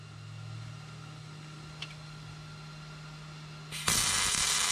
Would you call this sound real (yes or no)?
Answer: yes